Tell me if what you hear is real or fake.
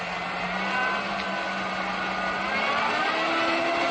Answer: real